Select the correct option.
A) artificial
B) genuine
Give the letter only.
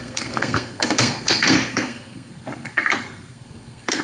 A